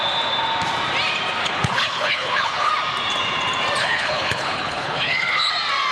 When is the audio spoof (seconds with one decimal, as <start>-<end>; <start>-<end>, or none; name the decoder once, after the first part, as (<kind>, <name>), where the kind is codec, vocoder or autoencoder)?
1.4-2.7 (codec, HILCodec); 3.8-5.5